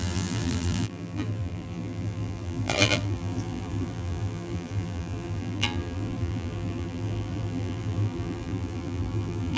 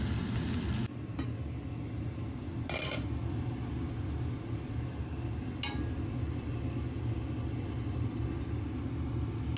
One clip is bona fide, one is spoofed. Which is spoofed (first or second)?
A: first